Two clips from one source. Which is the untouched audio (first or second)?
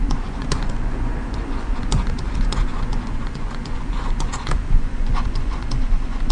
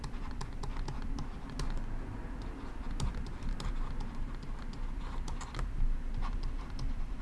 second